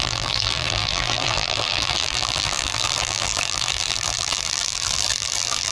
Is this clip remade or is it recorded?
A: remade